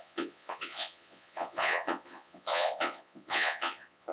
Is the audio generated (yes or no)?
yes